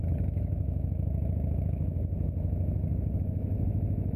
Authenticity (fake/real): fake